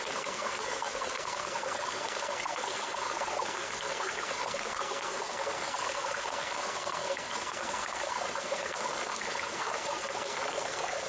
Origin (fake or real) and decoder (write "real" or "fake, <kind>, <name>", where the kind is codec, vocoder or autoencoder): fake, codec, SNAC